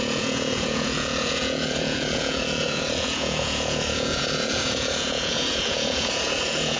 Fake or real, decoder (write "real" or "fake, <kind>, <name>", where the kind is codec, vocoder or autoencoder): fake, vocoder, Vocos